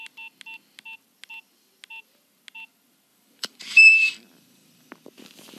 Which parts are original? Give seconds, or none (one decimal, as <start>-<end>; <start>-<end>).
0.0-3.1; 4.9-5.6